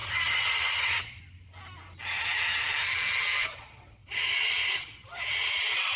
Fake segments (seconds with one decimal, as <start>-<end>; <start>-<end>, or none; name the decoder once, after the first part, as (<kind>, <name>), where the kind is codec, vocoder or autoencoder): 0.0-1.2 (vocoder, Vocos); 3.4-5.5